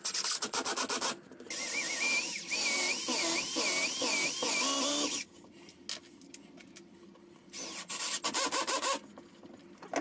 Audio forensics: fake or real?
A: real